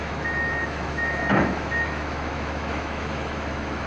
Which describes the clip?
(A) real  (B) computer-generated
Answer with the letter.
B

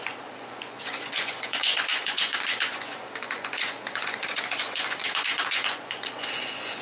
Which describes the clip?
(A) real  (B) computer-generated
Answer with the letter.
B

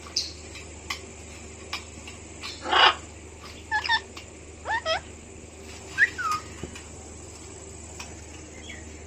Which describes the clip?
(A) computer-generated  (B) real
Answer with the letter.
B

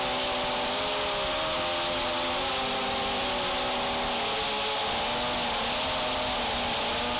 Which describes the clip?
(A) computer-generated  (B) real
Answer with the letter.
B